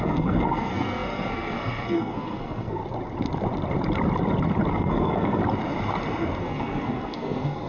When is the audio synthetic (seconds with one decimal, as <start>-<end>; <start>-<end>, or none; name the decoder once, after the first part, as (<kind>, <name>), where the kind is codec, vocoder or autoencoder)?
0.0-2.8 (codec, SNAC); 4.7-5.4; 6.4-7.7